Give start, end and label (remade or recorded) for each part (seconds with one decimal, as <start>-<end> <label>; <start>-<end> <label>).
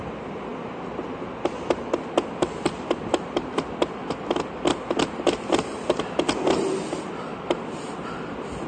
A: 0.0-8.7 recorded